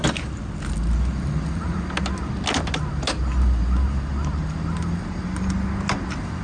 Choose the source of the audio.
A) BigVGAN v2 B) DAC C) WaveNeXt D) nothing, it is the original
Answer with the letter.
D